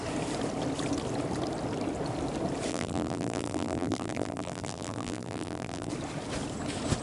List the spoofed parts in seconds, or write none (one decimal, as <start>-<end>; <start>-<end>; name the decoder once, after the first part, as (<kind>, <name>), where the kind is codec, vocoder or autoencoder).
2.7-5.9 (vocoder, BigVGAN v2)